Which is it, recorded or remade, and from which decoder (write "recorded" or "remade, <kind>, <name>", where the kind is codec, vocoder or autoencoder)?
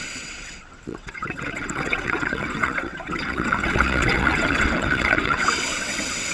remade, vocoder, WaveNeXt